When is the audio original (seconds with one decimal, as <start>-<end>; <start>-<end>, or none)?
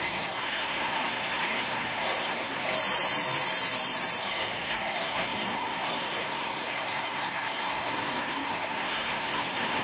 2.7-4.2